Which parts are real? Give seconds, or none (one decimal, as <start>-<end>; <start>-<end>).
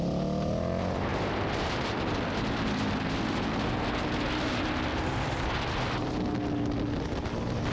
0.0-1.1; 3.0-4.9; 6.1-7.7